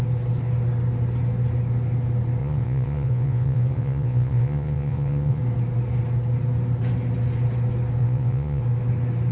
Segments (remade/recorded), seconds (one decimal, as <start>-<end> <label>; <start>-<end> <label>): 0.0-2.4 recorded; 2.4-5.4 remade; 5.4-8.0 recorded; 8.0-8.6 remade; 8.6-9.3 recorded